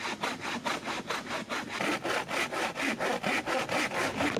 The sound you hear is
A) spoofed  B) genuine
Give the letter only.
B